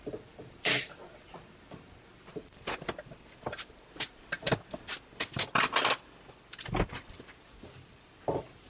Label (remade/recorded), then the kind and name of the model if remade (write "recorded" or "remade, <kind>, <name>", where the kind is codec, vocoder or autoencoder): remade, vocoder, BigVGAN v2